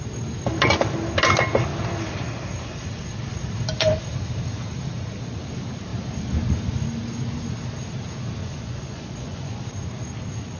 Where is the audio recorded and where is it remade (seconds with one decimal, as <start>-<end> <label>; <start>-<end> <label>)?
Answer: 0.0-8.4 recorded; 8.4-9.6 remade; 9.6-10.6 recorded

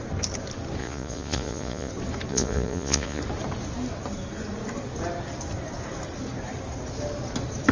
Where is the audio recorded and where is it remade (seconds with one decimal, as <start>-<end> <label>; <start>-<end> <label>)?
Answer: 0.0-0.8 recorded; 0.8-1.9 remade; 1.9-2.3 recorded; 2.3-3.2 remade; 3.2-7.7 recorded

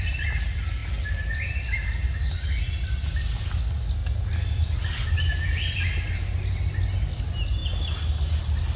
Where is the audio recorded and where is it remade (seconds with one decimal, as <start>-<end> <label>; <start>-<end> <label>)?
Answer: 0.0-8.8 recorded

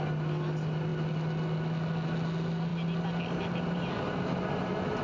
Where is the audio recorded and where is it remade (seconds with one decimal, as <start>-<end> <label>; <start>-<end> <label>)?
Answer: 0.0-5.0 recorded

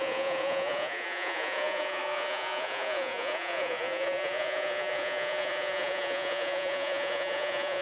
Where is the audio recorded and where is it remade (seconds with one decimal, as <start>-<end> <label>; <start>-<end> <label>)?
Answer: 0.0-7.8 remade